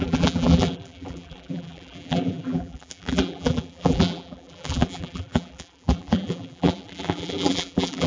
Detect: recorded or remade remade